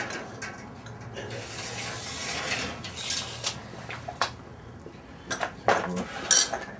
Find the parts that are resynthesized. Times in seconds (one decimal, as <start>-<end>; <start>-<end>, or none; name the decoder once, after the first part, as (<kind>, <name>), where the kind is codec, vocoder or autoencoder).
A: none